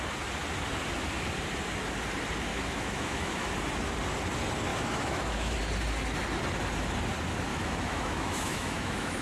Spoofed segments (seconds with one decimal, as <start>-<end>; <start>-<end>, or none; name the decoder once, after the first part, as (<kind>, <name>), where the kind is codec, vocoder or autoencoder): 2.5-3.5 (autoencoder, DAC-VAE); 4.7-5.6; 7.5-9.2